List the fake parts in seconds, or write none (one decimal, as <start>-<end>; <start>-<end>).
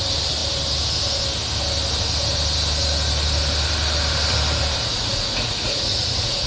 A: 4.9-6.5